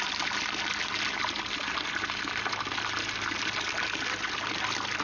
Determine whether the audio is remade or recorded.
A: recorded